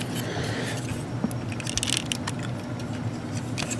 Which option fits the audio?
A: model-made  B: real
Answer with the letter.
B